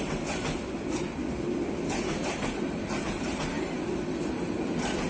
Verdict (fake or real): real